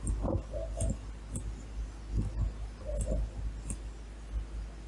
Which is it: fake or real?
real